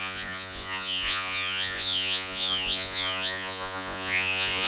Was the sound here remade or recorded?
remade